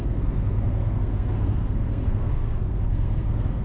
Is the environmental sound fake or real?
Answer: fake